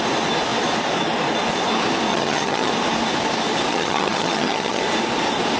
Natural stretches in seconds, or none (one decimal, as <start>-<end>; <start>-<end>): 0.0-2.1; 2.7-3.7; 4.8-5.6